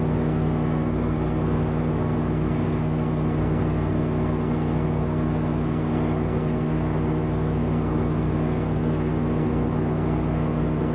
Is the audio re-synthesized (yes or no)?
yes